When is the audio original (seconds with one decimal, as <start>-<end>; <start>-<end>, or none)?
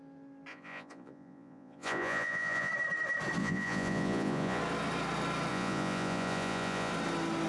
0.0-0.5; 2.7-3.4; 4.6-5.5; 6.9-7.5